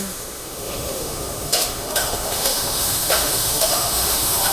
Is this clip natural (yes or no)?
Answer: no